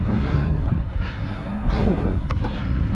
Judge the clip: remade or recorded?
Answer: remade